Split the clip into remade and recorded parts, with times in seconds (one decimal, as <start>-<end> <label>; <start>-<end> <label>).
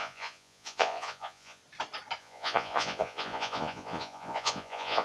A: 0.0-1.6 remade; 1.6-2.2 recorded; 2.2-5.0 remade